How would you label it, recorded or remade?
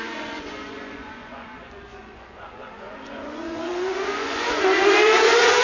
remade